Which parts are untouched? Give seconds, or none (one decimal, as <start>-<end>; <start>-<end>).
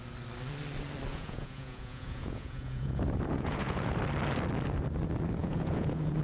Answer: 0.0-1.1; 4.0-5.4